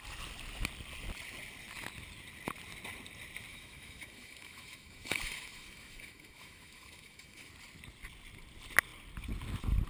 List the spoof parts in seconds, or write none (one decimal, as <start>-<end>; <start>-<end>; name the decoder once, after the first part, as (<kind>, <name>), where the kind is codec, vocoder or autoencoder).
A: 3.5-7.5 (autoencoder, DAC-VAE)